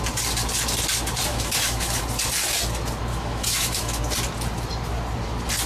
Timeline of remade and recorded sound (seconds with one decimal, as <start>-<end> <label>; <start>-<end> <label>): 0.0-1.3 recorded; 1.3-2.0 remade; 2.0-3.1 recorded; 3.1-4.0 remade; 4.0-5.7 recorded